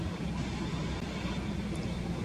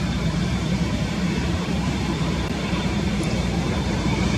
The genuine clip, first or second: first